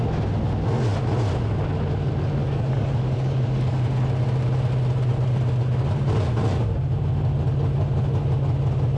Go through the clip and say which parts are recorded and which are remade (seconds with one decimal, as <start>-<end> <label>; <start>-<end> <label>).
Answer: 0.0-2.4 recorded; 2.4-3.8 remade; 3.8-9.0 recorded